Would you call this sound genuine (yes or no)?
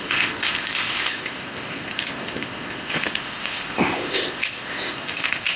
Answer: no